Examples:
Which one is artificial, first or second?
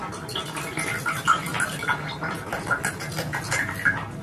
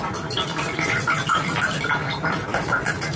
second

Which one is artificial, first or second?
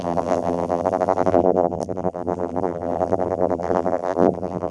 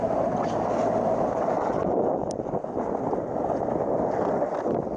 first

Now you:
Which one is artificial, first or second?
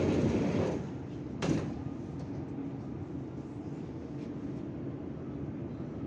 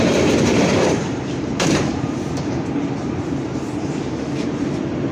second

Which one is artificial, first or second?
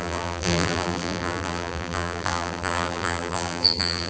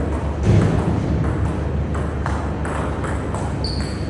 first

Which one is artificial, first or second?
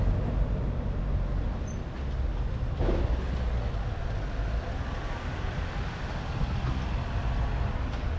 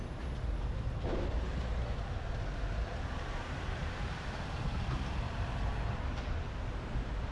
second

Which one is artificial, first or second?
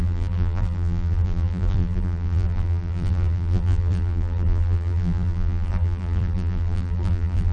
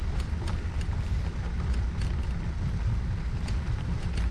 first